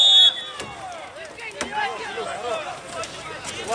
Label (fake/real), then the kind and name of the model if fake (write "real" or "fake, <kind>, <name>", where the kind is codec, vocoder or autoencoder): real